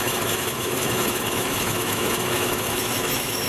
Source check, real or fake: fake